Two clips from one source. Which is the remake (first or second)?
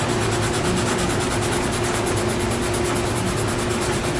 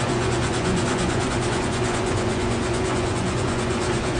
second